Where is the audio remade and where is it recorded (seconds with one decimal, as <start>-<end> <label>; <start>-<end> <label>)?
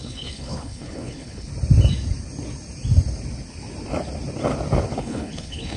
0.0-1.5 remade; 1.5-5.0 recorded; 5.0-5.8 remade